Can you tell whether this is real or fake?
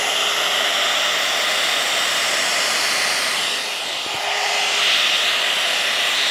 real